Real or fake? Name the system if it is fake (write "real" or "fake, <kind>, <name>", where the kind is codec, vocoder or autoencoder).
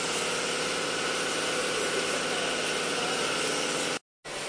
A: real